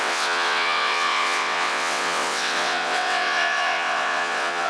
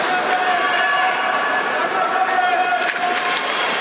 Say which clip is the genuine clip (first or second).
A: second